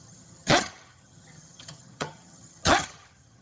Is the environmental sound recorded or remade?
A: remade